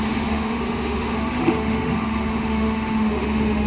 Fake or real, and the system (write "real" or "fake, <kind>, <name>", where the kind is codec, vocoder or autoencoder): fake, autoencoder, DAC-VAE